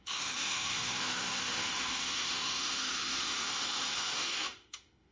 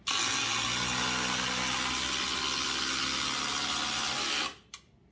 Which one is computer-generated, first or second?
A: first